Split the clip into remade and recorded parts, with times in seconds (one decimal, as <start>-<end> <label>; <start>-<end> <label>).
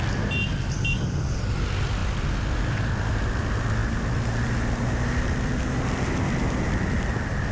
0.0-0.5 recorded; 0.5-1.2 remade; 1.2-7.5 recorded